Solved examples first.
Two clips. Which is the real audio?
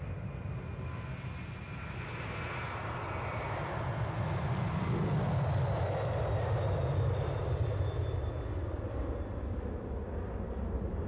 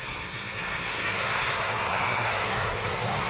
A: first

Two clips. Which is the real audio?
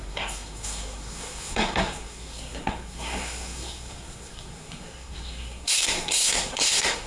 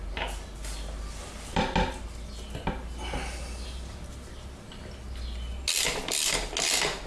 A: second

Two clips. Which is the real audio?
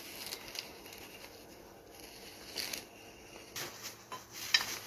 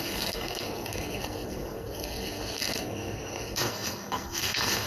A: first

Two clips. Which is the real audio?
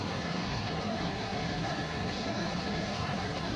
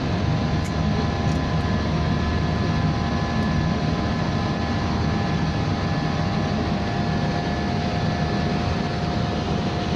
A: second